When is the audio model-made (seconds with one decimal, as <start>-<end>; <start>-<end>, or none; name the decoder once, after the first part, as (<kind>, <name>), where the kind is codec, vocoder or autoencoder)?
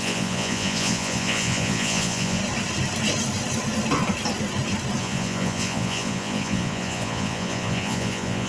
0.0-2.4 (vocoder, Vocos); 5.0-8.5